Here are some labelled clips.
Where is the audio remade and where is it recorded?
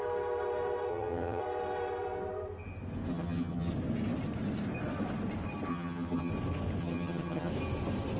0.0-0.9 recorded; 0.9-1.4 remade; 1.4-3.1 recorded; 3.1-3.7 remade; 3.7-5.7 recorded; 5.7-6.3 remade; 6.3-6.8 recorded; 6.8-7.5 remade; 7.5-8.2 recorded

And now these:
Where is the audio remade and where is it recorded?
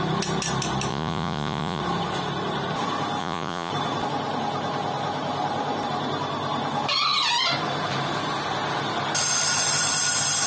0.0-0.9 recorded; 0.9-1.8 remade; 1.8-3.2 recorded; 3.2-3.7 remade; 3.7-10.5 recorded